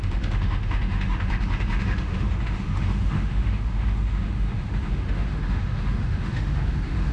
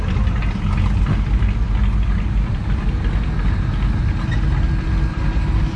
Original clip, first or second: second